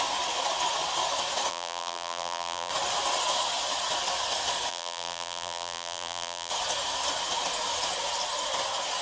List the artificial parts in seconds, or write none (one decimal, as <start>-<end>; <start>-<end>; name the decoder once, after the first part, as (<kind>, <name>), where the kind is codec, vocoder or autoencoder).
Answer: 1.5-2.7 (vocoder, BigVGAN v2); 4.7-6.5